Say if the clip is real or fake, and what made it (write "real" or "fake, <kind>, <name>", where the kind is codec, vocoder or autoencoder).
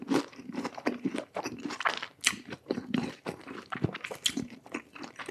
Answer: fake, vocoder, BigVGAN v2